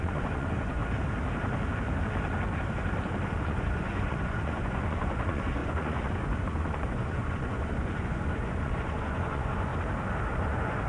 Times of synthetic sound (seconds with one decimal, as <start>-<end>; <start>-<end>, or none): 0.0-0.8; 3.4-9.7; 10.3-10.9